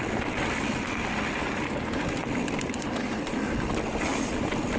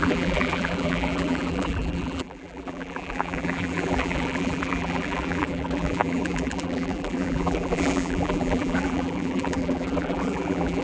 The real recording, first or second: first